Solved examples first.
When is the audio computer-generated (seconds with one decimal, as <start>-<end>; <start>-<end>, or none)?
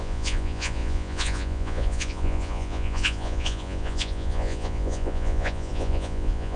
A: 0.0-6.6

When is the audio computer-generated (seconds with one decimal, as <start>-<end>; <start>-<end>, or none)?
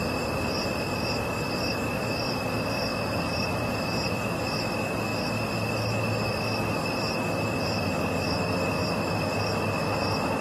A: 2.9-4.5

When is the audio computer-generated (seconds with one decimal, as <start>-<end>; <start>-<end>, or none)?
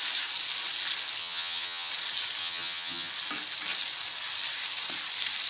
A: 1.2-1.9; 2.4-3.1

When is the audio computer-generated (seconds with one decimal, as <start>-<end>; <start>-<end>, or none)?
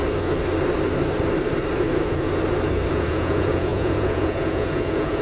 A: 2.9-5.2